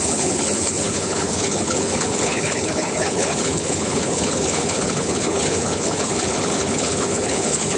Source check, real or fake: fake